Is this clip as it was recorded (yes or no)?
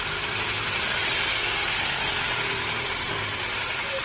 yes